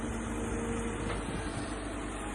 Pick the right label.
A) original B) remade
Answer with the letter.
A